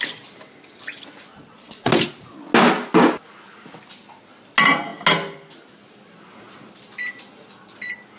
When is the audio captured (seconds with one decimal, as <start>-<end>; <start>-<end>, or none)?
0.0-1.3; 1.9-8.2